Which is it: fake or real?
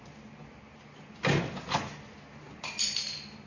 real